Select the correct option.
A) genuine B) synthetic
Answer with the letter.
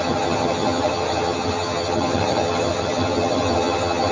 B